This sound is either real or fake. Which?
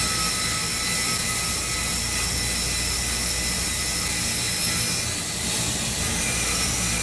real